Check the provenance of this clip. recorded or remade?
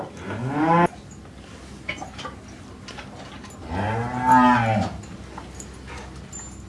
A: recorded